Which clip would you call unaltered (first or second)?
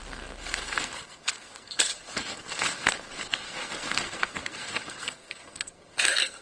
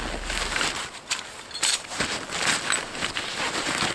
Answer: second